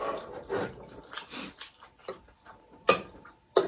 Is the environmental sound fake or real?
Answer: fake